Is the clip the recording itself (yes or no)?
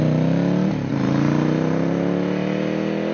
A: yes